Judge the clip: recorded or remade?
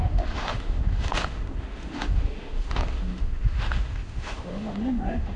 remade